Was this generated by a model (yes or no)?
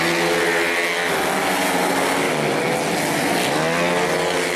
no